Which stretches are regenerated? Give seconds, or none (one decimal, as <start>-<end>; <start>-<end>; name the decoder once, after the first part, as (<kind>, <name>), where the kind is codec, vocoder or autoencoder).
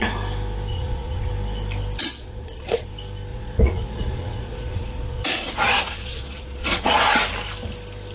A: 0.7-1.3 (vocoder, Vocos); 2.0-2.9; 3.3-7.0